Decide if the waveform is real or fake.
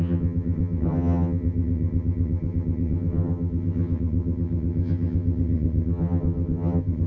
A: fake